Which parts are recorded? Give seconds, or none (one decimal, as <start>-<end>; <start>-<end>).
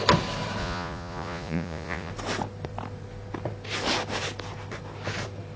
0.0-0.6; 2.1-5.6